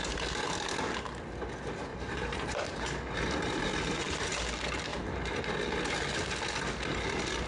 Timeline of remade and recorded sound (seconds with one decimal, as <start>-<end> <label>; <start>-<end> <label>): 0.0-1.9 recorded; 1.9-4.5 remade; 4.5-4.9 recorded; 4.9-5.5 remade; 5.5-7.5 recorded